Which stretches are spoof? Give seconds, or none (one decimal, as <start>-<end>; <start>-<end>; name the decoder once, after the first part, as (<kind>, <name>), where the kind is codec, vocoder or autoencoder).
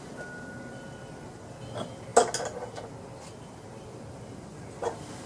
none